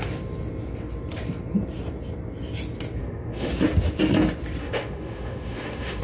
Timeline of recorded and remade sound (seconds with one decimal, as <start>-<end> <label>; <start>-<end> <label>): 0.0-3.0 recorded; 3.0-3.5 remade; 3.5-4.6 recorded; 4.6-6.0 remade